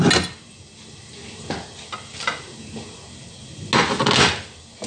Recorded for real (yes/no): yes